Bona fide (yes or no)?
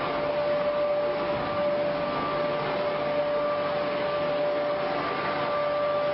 yes